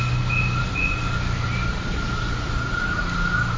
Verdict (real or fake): real